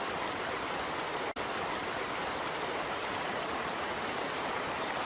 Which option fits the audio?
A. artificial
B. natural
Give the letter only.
B